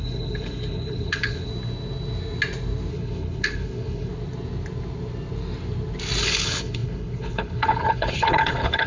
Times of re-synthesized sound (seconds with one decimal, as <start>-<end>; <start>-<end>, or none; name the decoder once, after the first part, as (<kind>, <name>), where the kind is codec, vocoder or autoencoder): 0.0-1.5 (codec, HILCodec); 2.9-4.1; 6.2-8.9